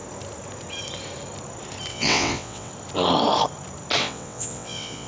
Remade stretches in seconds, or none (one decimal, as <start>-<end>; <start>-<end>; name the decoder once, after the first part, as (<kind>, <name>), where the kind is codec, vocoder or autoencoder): 1.9-2.7 (vocoder, WaveNeXt); 4.0-5.1